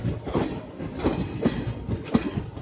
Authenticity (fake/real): real